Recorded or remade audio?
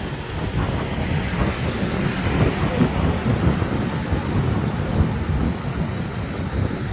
recorded